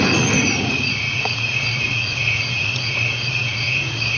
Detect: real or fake fake